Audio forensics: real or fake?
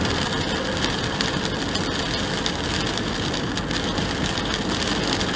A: real